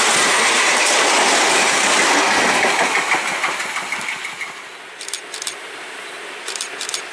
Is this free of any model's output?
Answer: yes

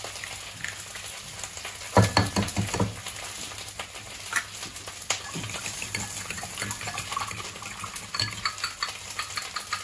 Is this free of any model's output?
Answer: yes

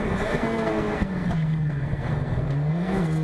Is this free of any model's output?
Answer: no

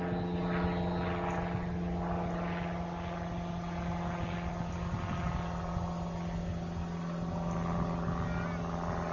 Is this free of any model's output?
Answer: yes